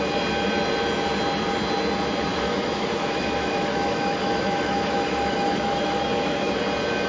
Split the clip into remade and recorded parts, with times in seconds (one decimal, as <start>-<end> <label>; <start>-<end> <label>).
0.0-2.3 recorded; 2.3-6.6 remade; 6.6-7.1 recorded